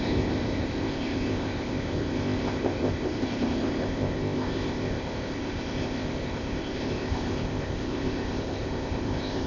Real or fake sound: fake